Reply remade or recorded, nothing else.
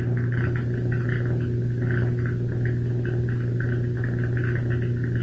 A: recorded